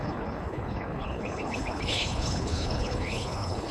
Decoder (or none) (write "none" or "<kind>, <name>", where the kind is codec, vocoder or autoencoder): codec, HILCodec